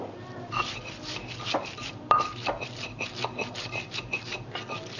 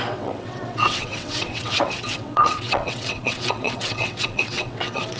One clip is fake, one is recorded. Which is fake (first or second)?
second